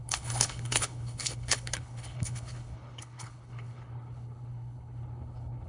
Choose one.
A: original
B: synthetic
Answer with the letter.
B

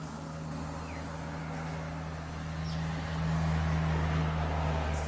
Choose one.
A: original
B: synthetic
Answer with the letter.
A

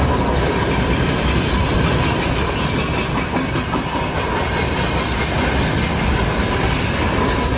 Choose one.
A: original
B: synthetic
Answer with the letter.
A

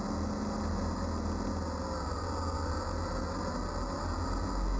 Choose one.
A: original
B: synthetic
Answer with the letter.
A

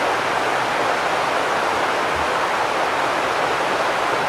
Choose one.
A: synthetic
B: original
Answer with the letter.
B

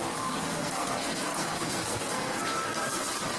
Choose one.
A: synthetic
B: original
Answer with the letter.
A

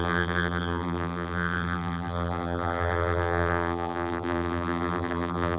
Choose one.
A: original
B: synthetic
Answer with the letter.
B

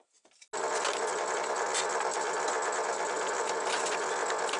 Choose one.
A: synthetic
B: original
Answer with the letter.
B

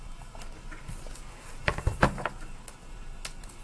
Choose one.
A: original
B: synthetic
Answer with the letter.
A